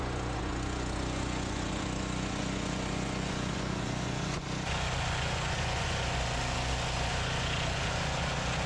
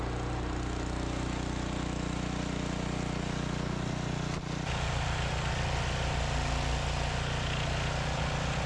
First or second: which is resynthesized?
first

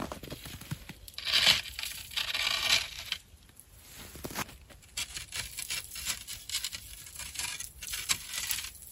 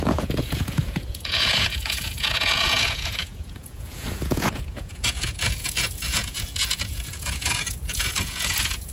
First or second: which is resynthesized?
second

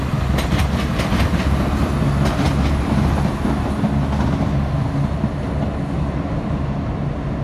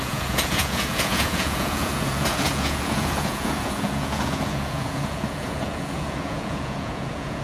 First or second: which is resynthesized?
second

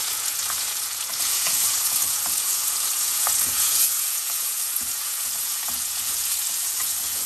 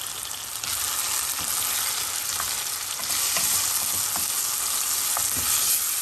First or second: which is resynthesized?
first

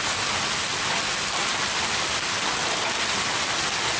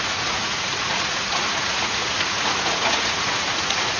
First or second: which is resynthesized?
second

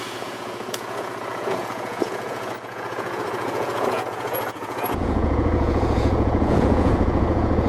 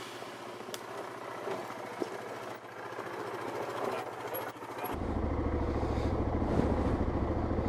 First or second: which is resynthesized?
first